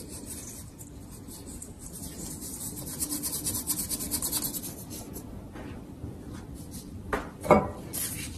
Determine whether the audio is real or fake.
real